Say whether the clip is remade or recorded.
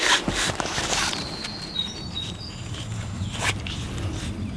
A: recorded